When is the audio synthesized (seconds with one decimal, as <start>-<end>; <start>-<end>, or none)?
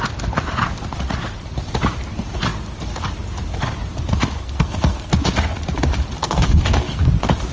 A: 4.4-5.1; 6.2-7.1